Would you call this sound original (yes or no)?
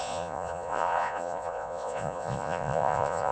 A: no